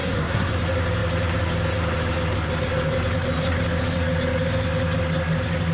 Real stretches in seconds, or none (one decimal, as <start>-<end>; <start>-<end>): 0.5-5.7